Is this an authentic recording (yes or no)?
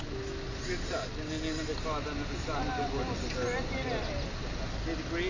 yes